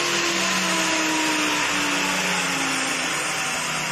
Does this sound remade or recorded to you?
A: recorded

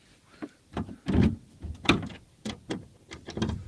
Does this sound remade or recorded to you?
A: recorded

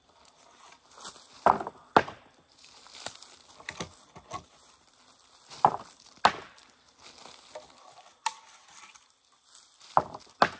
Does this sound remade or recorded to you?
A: recorded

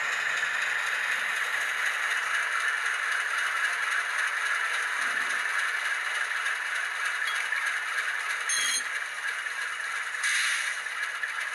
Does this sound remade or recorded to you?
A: recorded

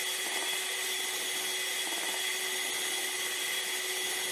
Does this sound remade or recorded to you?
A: recorded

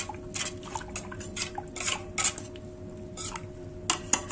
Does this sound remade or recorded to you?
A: recorded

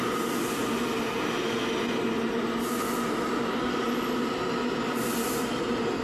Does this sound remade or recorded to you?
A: recorded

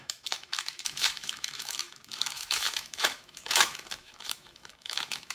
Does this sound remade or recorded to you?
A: remade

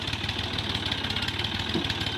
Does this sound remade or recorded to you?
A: recorded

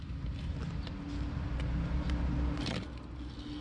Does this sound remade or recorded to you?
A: recorded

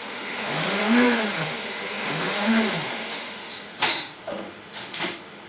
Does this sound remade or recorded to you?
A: remade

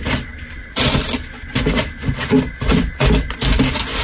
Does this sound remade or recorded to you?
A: recorded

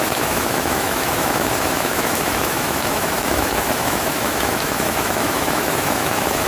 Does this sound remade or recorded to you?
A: remade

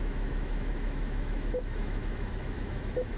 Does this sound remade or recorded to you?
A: remade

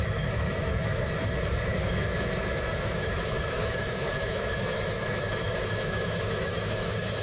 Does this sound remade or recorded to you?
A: remade